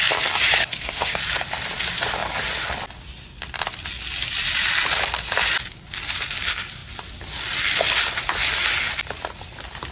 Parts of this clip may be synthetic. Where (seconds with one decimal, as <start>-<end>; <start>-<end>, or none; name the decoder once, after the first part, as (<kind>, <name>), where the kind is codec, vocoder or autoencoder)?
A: 0.6-1.2 (codec, SNAC)